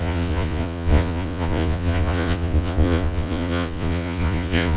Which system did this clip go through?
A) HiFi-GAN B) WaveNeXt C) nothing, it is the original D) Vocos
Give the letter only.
D